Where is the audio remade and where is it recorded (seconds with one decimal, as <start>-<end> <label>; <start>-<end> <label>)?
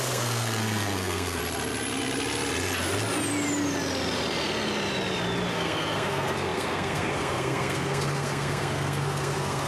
0.0-1.4 remade; 1.4-5.5 recorded; 5.5-9.7 remade